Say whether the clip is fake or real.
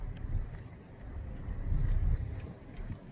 real